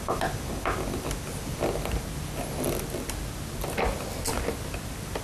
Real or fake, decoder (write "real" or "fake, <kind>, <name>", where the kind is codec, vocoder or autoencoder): real